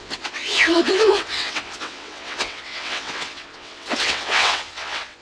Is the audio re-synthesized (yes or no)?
yes